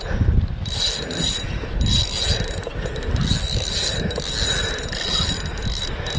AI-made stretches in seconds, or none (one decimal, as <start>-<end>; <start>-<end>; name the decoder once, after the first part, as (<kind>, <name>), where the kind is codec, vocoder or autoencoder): none